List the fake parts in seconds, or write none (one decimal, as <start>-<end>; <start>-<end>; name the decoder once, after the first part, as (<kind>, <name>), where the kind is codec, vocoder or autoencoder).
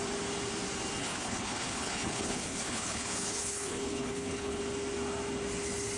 1.0-4.6 (codec, HILCodec)